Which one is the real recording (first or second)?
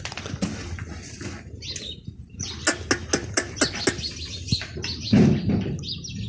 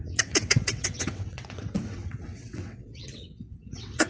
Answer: first